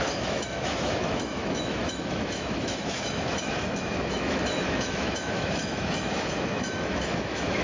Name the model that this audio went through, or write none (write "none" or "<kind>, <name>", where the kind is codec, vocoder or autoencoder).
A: autoencoder, DAC-VAE